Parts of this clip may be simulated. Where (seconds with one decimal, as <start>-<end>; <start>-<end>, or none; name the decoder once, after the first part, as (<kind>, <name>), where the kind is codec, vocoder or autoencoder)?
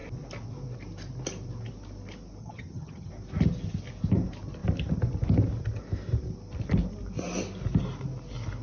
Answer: 2.4-3.1 (vocoder, HiFi-GAN)